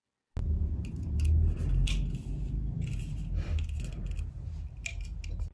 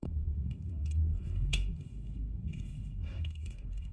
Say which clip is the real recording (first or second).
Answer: first